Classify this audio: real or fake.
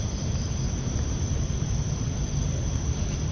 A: real